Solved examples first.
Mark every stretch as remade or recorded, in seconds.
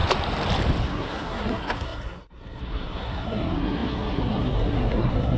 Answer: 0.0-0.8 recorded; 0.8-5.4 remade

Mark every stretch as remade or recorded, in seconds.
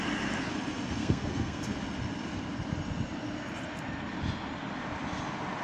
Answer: 0.0-1.0 recorded; 1.0-1.6 remade; 1.6-5.6 recorded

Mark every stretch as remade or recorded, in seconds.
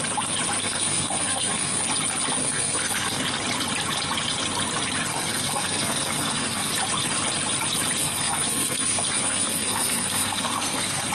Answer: 0.0-0.6 recorded; 0.6-1.8 remade; 1.8-2.4 recorded; 2.4-3.2 remade; 3.2-5.1 recorded; 5.1-6.7 remade; 6.7-8.0 recorded; 8.0-11.1 remade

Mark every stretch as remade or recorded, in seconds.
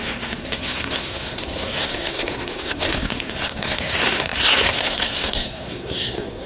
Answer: 0.0-6.5 remade